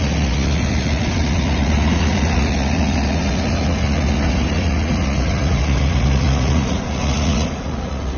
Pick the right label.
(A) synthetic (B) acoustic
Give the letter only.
A